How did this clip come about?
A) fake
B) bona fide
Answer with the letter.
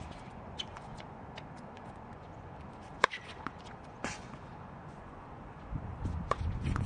A